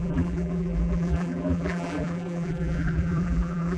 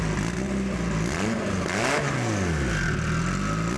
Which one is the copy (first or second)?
first